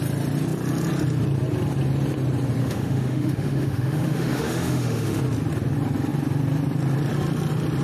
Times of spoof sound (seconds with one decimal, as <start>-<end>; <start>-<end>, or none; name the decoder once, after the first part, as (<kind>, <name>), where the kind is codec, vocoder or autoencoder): 2.6-5.2 (autoencoder, DAC-VAE)